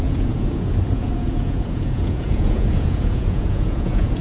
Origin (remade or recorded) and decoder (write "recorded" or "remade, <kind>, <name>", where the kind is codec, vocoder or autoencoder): remade, vocoder, Vocos